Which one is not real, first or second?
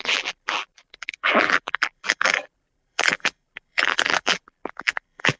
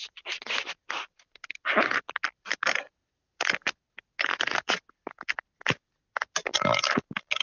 first